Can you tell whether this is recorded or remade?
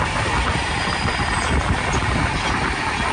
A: recorded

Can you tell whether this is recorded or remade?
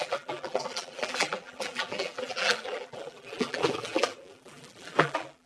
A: remade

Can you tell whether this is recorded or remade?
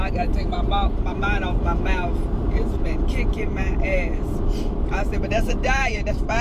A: remade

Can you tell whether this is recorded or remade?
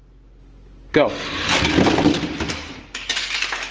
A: recorded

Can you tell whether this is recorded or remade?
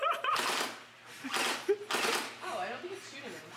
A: recorded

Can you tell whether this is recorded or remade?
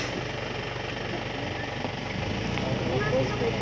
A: remade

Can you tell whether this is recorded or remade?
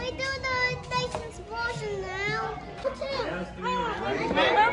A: recorded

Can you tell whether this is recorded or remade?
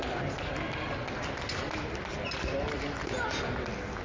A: recorded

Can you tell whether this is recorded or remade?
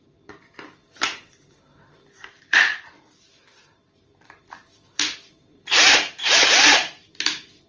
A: remade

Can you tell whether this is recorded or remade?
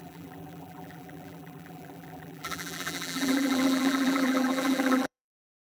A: remade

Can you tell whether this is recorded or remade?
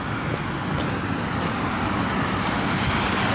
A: recorded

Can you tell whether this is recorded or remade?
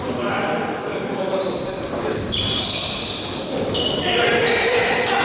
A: recorded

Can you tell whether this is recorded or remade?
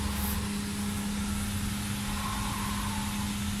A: recorded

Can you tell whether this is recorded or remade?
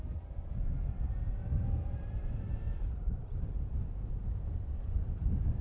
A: remade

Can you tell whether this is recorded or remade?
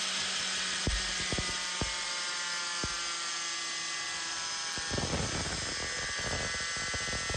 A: recorded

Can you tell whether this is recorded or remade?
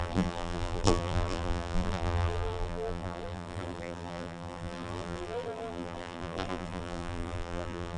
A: remade